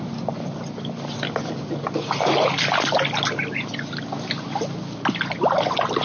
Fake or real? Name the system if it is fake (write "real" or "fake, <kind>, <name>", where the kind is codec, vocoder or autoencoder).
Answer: real